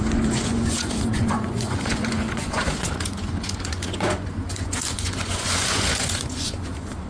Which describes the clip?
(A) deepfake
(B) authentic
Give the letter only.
A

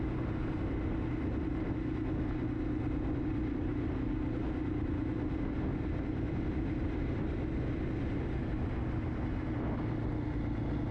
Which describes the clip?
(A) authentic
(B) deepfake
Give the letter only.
A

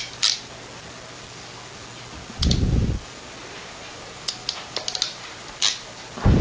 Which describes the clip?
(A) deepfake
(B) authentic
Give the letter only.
B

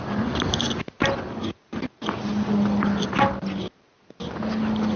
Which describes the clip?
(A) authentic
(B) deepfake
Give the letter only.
A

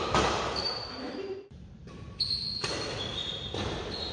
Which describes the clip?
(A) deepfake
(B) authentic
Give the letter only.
A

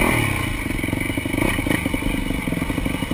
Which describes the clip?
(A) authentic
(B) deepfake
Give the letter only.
A